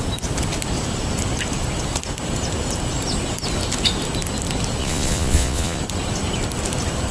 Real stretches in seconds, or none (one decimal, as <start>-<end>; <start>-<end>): 0.0-4.8; 5.8-7.1